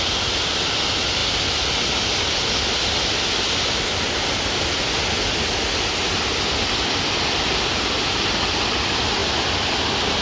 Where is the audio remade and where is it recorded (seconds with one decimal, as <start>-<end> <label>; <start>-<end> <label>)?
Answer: 0.0-10.2 recorded

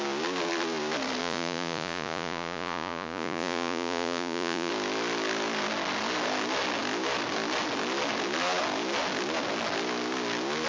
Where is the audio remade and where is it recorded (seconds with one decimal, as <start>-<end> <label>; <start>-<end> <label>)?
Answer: 0.0-1.2 recorded; 1.2-4.7 remade; 4.7-10.7 recorded

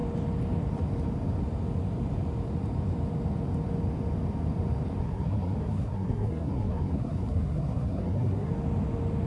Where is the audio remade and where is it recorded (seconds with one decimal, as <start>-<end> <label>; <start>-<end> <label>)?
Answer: 0.0-5.0 recorded; 5.0-8.5 remade; 8.5-9.3 recorded

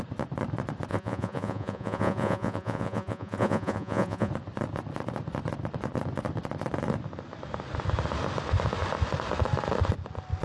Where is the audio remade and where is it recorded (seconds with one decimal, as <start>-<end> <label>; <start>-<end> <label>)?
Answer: 0.0-0.9 recorded; 0.9-4.3 remade; 4.3-10.4 recorded

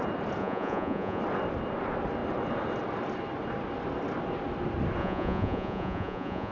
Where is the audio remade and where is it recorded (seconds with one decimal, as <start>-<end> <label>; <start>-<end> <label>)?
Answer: 0.0-0.4 recorded; 0.4-1.2 remade; 1.2-5.0 recorded; 5.0-6.5 remade

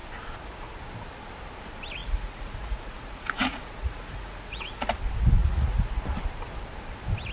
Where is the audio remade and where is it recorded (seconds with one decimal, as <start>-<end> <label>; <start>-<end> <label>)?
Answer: 0.0-2.0 recorded; 2.0-4.9 remade; 4.9-5.4 recorded; 5.4-5.9 remade; 5.9-7.3 recorded

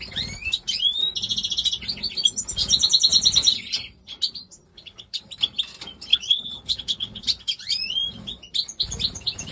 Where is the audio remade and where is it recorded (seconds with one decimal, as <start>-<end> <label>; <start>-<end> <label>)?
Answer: 0.0-4.7 recorded; 4.7-5.2 remade; 5.2-6.1 recorded; 6.1-7.2 remade; 7.2-9.5 recorded

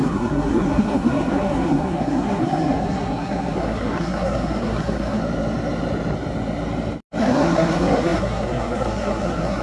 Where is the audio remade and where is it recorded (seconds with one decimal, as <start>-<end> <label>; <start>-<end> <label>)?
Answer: 0.0-5.2 remade; 5.2-7.2 recorded; 7.2-9.6 remade